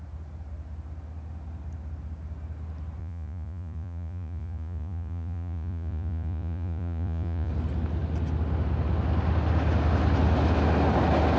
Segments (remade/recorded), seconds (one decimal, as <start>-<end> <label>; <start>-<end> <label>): 0.0-3.0 recorded; 3.0-7.5 remade; 7.5-11.4 recorded